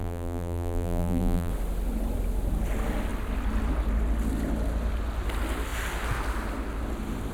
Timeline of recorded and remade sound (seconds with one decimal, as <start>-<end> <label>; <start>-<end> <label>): 0.0-1.5 remade; 1.5-7.3 recorded